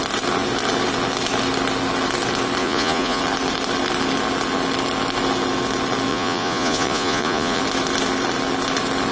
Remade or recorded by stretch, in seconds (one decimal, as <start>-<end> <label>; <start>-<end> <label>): 0.0-2.6 recorded; 2.6-3.2 remade; 3.2-6.1 recorded; 6.1-7.6 remade; 7.6-9.1 recorded